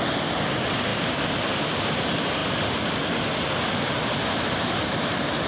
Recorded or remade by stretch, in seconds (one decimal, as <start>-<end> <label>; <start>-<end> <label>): 0.0-5.5 recorded